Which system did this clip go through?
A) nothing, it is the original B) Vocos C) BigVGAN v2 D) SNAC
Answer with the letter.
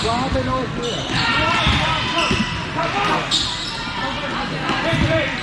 A